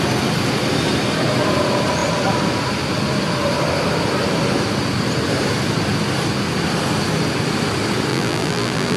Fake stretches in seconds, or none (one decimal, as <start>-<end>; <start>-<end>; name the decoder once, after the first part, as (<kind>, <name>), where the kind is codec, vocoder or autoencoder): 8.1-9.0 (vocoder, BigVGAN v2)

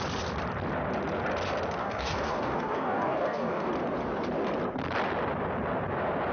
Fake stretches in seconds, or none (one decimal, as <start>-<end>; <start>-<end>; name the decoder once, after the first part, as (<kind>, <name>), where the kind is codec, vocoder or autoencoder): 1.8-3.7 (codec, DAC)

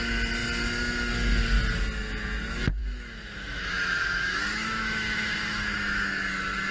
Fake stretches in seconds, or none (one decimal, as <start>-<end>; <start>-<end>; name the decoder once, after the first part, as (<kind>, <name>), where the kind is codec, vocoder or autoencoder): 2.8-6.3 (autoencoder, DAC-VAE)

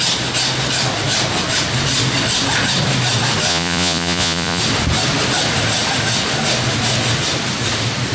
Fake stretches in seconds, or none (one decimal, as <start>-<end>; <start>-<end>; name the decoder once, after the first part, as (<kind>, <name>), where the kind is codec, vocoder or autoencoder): 3.5-4.6 (vocoder, Vocos)

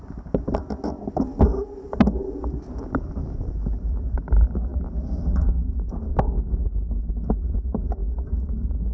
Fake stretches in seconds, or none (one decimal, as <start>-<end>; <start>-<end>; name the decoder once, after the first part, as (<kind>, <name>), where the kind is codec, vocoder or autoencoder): none